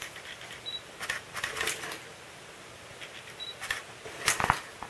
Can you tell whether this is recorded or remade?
recorded